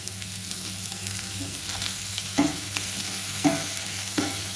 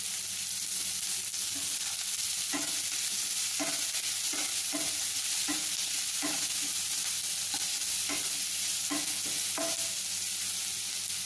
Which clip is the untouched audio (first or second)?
second